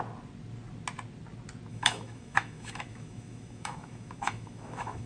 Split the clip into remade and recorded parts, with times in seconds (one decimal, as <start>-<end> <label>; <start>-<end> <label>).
0.0-1.7 recorded; 1.7-5.1 remade